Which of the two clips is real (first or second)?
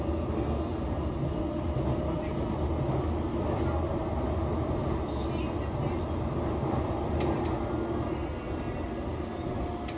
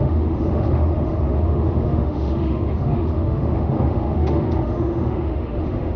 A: first